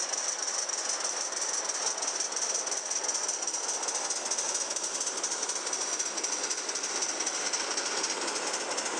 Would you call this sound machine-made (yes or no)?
no